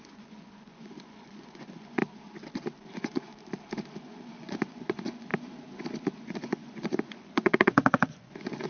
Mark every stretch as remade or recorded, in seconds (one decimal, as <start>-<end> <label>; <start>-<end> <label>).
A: 0.0-2.0 remade; 2.0-2.9 recorded; 2.9-3.3 remade; 3.3-4.0 recorded; 4.0-5.3 remade; 5.3-6.2 recorded; 6.2-8.7 remade